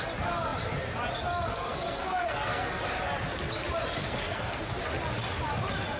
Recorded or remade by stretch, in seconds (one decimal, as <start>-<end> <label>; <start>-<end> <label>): 0.0-1.5 recorded; 1.5-2.8 remade; 2.8-4.0 recorded; 4.0-4.6 remade; 4.6-6.0 recorded